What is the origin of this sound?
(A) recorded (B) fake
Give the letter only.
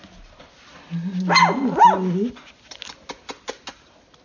A